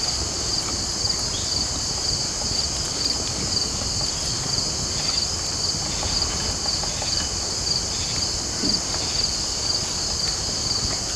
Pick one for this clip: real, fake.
real